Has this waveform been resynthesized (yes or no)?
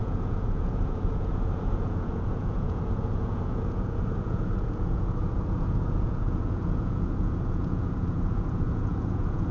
yes